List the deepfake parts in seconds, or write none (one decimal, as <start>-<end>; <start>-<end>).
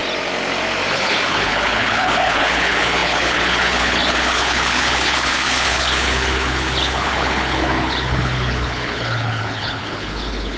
0.9-10.6